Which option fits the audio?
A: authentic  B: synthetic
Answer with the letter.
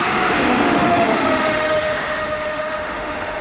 B